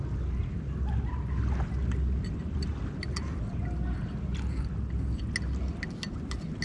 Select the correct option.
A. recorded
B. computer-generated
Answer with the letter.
A